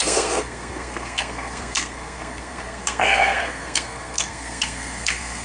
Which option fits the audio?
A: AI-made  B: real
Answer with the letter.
A